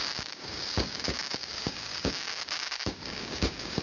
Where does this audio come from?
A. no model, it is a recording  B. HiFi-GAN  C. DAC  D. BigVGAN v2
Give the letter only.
C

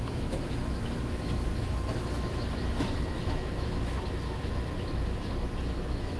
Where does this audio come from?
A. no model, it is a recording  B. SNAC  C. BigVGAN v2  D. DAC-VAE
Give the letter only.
D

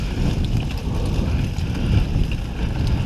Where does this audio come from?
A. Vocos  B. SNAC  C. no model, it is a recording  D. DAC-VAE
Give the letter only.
C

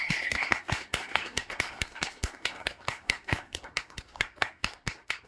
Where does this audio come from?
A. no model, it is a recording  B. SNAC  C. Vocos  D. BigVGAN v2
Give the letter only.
B